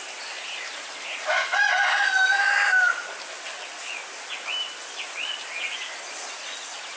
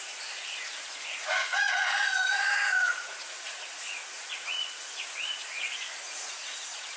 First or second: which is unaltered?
first